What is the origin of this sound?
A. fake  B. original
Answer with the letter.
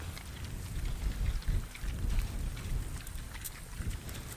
B